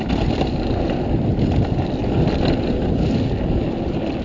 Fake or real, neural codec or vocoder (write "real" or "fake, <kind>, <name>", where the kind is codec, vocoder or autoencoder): real